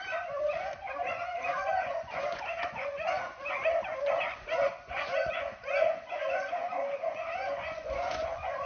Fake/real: fake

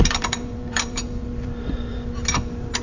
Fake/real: fake